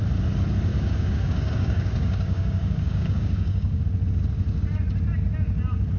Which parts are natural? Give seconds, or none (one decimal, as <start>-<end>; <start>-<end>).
0.0-0.7; 3.8-6.0